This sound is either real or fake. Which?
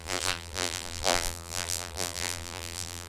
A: fake